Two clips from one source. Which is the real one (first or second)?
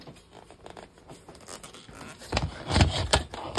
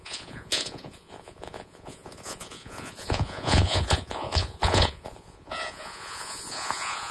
first